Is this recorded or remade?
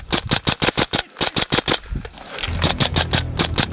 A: recorded